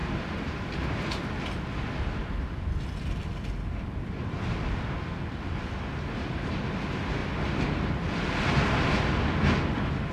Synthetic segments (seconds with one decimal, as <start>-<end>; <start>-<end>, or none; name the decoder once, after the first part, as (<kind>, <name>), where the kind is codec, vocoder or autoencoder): 0.0-0.7 (vocoder, BigVGAN v2)